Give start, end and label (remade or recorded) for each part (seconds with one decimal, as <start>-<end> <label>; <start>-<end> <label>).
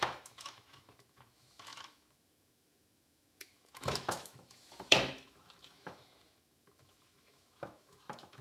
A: 0.0-8.4 remade